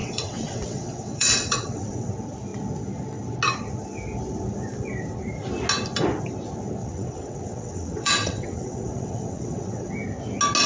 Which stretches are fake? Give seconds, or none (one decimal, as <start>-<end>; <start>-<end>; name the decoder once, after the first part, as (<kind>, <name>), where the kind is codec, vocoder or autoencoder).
0.0-2.1 (vocoder, WaveNeXt); 6.8-9.9